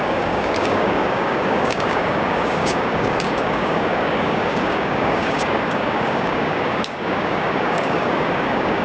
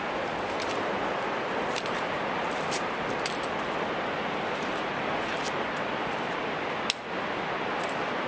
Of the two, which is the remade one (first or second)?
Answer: first